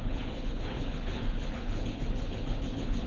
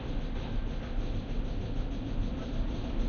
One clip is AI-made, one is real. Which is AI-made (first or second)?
first